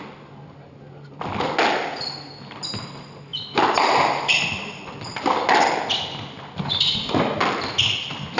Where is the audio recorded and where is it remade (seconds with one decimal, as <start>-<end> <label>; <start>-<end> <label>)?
0.0-8.4 recorded